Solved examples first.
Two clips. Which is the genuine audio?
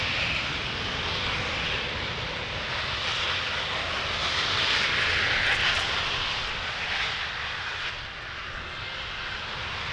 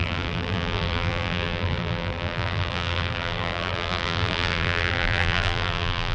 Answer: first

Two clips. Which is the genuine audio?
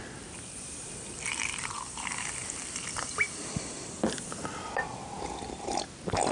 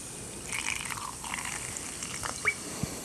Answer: second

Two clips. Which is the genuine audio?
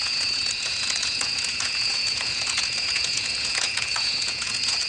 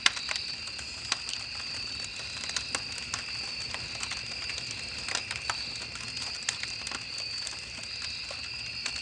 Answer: second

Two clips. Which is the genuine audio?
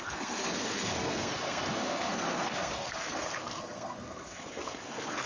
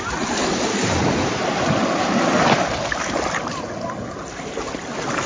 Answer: second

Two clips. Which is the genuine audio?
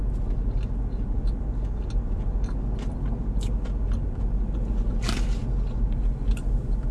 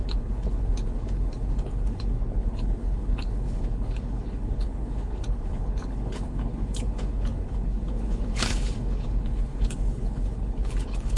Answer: first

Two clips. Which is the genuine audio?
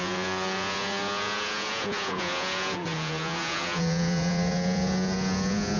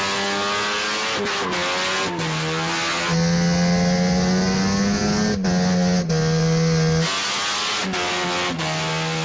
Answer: second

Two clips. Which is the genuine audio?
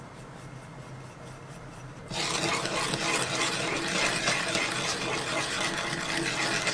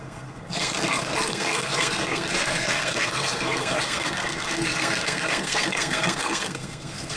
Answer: first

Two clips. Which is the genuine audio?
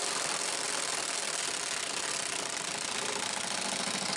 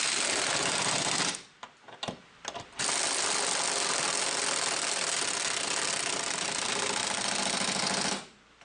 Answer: second